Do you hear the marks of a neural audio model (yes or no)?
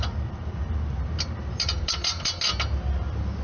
no